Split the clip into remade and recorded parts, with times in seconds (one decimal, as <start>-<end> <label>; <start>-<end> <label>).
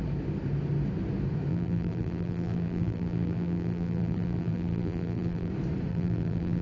0.0-1.5 recorded; 1.5-5.5 remade; 5.5-5.9 recorded; 5.9-6.6 remade